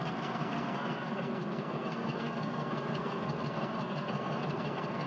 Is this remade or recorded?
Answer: remade